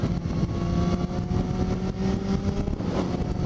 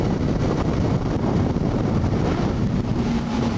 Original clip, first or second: first